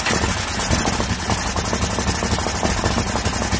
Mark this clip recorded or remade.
recorded